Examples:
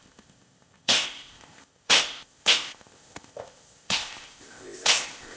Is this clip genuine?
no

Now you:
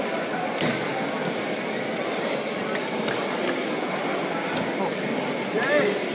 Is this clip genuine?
yes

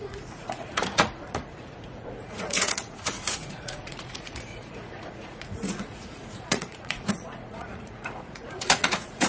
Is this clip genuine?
no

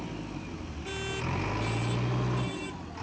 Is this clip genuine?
yes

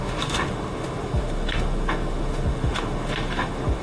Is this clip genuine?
no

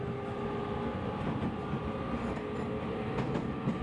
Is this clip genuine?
yes